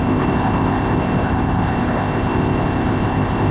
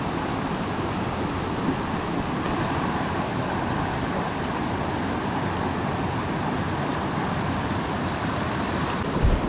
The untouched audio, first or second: second